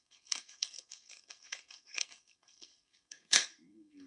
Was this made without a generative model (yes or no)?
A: no